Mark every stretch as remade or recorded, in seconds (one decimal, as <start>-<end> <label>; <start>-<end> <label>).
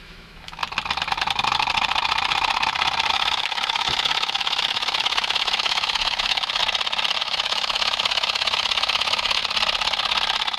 0.0-0.6 remade; 0.6-3.1 recorded; 3.1-6.6 remade; 6.6-7.2 recorded; 7.2-9.4 remade; 9.4-10.6 recorded